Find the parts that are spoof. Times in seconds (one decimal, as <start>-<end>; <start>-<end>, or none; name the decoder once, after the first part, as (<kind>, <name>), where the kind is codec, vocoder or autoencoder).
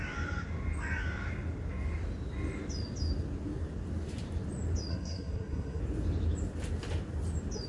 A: 4.9-5.8 (codec, SNAC)